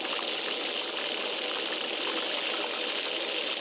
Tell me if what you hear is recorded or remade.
recorded